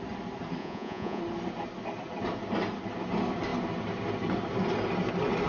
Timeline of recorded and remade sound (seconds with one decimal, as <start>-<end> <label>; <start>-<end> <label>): 0.0-0.6 recorded; 0.6-1.2 remade; 1.2-5.5 recorded